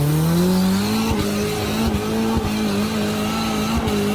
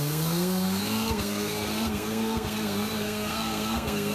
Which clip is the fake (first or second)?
second